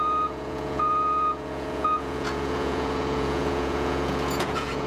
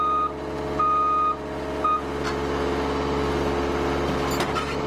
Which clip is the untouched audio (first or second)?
second